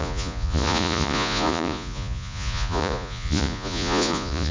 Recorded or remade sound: remade